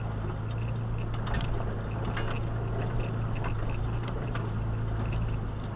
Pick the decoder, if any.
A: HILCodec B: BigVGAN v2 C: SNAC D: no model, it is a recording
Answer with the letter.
D